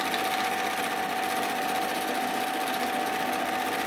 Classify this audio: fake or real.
real